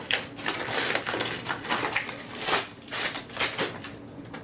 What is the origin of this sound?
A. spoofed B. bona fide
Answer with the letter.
B